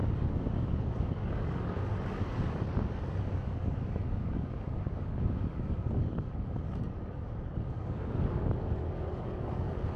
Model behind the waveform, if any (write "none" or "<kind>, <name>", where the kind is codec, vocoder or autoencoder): codec, DAC